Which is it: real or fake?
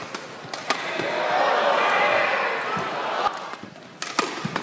real